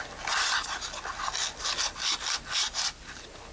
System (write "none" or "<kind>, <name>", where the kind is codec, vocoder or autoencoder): none